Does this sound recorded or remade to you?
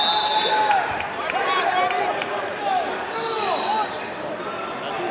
recorded